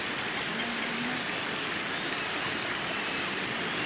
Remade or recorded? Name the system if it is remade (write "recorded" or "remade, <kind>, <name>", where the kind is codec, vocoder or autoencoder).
remade, vocoder, BigVGAN v2